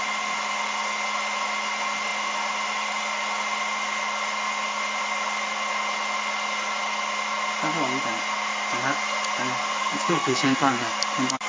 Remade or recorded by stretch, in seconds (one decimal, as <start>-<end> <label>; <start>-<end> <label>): 0.0-9.8 recorded; 9.8-10.9 remade; 10.9-11.5 recorded